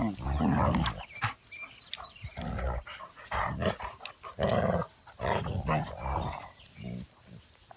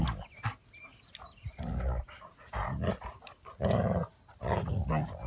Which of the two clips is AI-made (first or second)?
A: first